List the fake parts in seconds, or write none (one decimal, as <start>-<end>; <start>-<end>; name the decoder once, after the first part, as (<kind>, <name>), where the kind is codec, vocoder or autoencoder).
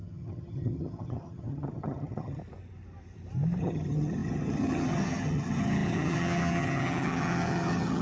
0.0-2.4 (vocoder, HiFi-GAN); 3.6-8.0